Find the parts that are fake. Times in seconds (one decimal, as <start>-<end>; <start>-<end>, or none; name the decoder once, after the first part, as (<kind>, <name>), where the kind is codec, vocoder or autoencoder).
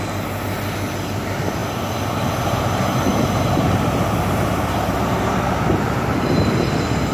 3.1-7.1 (vocoder, BigVGAN v2)